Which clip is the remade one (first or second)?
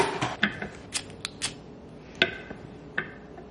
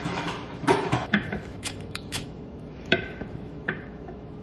second